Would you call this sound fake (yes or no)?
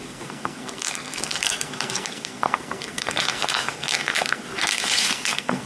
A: yes